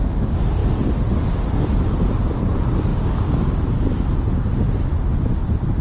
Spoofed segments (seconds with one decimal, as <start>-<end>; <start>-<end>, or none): 0.0-2.9; 4.7-5.8